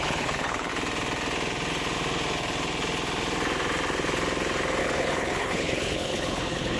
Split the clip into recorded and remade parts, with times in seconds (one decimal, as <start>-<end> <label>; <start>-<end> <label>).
0.0-0.7 remade; 0.7-4.8 recorded; 4.8-6.8 remade

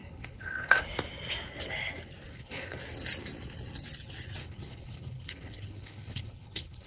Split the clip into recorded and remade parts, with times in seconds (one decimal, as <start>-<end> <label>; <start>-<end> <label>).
0.0-0.8 remade; 0.8-2.3 recorded; 2.3-2.8 remade; 2.8-4.4 recorded; 4.4-6.9 remade

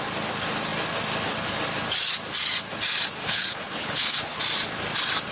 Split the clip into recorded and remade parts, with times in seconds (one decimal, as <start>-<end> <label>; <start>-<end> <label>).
0.0-3.2 recorded; 3.2-4.4 remade; 4.4-5.3 recorded

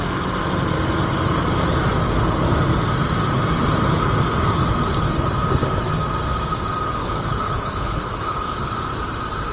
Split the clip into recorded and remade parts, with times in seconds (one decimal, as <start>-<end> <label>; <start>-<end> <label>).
0.0-7.0 recorded; 7.0-8.7 remade; 8.7-9.5 recorded